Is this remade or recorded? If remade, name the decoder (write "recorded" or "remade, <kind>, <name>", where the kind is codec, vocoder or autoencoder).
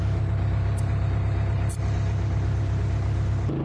recorded